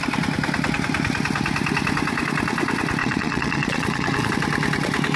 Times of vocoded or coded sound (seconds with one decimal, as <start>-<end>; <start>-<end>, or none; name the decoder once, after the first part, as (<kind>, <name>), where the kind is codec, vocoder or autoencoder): 3.0-4.3 (vocoder, Vocos)